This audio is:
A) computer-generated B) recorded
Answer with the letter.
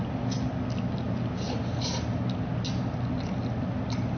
B